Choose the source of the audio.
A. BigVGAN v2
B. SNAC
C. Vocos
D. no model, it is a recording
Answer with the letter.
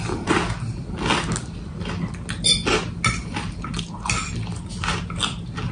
D